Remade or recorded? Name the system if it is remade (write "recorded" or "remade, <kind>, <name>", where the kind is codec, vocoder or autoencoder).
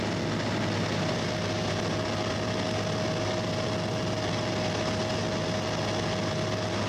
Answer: recorded